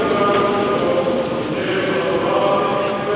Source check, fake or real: real